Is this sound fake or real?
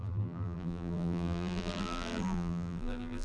fake